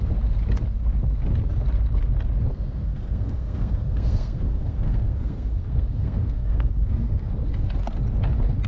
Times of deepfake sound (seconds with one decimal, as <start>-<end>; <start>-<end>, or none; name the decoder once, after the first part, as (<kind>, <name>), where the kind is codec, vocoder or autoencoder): 2.5-7.3 (codec, SNAC)